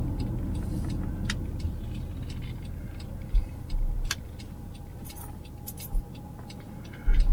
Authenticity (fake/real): real